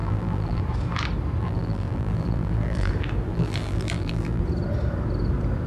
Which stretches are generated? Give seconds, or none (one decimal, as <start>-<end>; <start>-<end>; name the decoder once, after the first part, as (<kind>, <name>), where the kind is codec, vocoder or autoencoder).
0.0-0.6 (vocoder, BigVGAN v2); 1.4-2.9; 3.3-4.4